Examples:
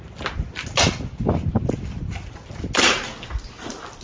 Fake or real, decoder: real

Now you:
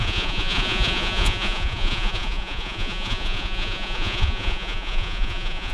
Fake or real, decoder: fake, vocoder, Vocos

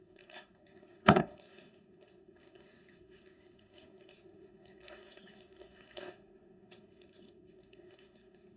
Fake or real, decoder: fake, codec, SNAC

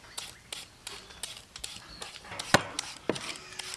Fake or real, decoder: real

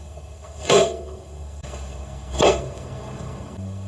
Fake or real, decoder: fake, codec, SNAC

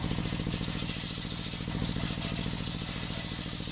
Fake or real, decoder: real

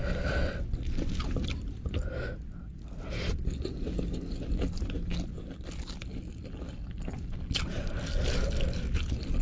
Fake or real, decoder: real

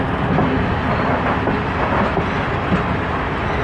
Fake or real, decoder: real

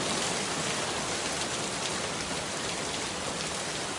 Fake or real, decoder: real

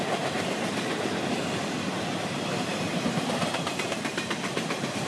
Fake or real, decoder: fake, vocoder, BigVGAN v2